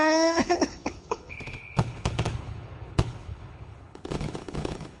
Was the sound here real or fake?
fake